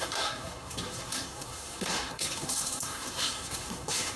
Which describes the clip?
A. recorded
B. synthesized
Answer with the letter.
B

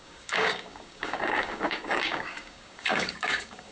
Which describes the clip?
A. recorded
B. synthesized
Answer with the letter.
B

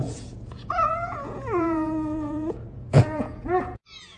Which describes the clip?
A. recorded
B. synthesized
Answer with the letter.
B